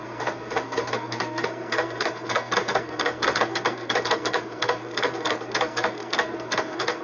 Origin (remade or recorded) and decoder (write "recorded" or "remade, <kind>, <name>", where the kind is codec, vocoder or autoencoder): remade, codec, SNAC